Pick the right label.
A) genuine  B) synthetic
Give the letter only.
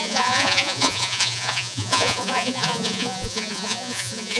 B